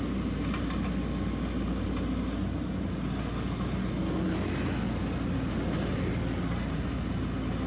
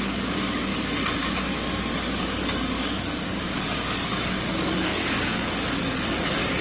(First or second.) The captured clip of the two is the first